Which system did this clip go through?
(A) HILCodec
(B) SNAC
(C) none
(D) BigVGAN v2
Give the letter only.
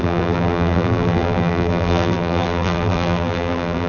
D